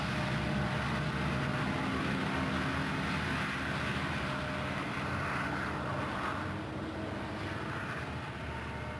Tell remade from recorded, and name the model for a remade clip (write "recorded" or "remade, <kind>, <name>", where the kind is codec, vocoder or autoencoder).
recorded